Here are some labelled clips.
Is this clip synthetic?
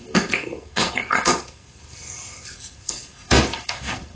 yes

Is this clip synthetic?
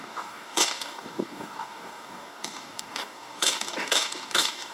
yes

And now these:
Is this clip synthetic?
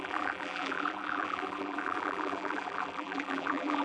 yes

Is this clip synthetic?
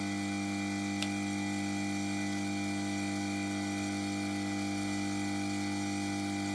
no